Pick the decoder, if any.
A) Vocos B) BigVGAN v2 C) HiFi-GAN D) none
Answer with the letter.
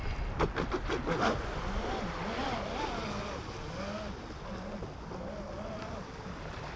D